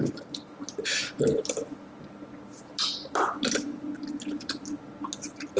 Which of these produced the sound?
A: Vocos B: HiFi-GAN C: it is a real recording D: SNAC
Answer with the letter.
C